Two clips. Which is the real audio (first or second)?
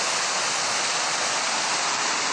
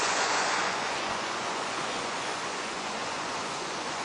first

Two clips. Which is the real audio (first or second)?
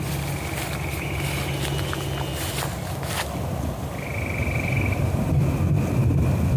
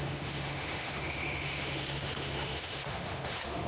first